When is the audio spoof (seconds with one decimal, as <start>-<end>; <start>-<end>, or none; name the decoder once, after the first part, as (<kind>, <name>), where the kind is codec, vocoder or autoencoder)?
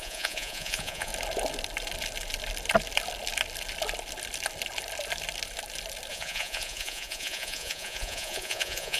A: 0.0-1.1 (vocoder, Vocos); 6.1-9.0